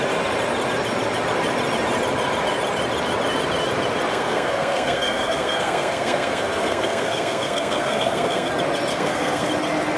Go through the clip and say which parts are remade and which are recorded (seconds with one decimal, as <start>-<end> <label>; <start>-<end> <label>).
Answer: 0.0-4.1 recorded; 4.1-8.5 remade; 8.5-8.9 recorded; 8.9-9.5 remade; 9.5-10.0 recorded